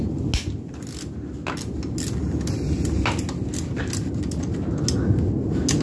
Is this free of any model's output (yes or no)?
yes